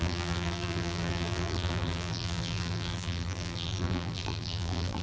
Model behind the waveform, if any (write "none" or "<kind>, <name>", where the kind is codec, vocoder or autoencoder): vocoder, BigVGAN v2